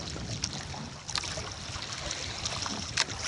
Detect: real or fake real